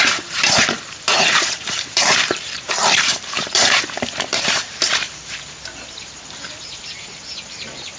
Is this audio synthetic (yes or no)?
yes